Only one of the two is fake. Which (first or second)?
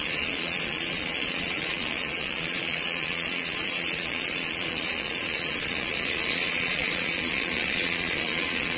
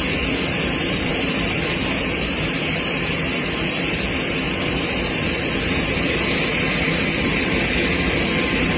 first